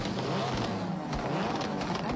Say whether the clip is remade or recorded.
recorded